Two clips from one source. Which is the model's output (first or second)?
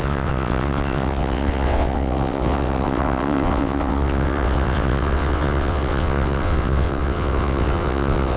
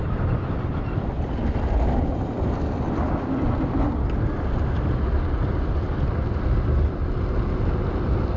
first